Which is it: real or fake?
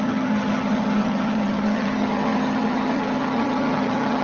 fake